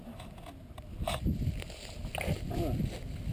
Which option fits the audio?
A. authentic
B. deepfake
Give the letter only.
A